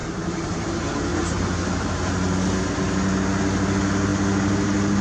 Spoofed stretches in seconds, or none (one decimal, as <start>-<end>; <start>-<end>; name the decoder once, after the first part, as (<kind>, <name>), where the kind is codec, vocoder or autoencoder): 0.0-0.7 (vocoder, BigVGAN v2)